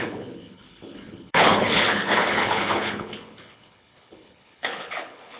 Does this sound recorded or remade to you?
remade